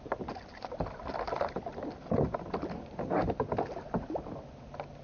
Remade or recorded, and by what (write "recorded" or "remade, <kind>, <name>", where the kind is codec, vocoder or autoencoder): recorded